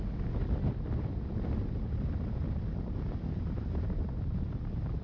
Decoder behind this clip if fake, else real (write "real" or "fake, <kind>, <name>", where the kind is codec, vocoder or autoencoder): real